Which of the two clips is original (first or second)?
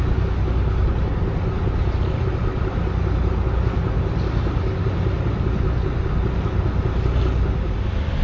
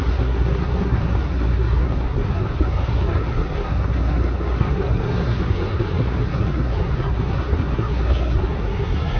first